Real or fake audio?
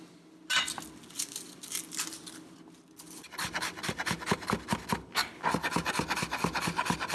real